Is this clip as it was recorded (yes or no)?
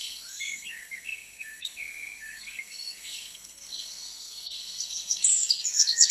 no